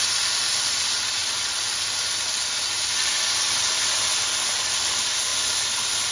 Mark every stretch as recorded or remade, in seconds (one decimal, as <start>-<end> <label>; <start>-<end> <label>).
0.0-6.1 recorded